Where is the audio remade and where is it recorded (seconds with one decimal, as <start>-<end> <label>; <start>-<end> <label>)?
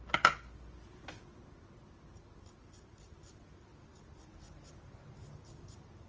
0.0-6.1 recorded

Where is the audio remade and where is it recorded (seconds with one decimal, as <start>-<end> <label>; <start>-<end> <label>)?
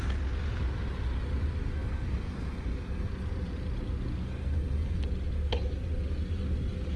0.0-1.6 recorded; 1.6-3.1 remade; 3.1-4.2 recorded; 4.2-5.0 remade; 5.0-7.0 recorded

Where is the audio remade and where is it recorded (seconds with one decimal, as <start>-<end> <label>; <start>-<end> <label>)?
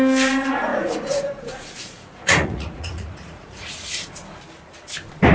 0.0-0.7 recorded; 0.7-3.9 remade; 3.9-5.3 recorded